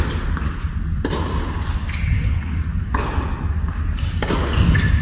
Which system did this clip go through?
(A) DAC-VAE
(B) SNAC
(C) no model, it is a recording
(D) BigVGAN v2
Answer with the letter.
C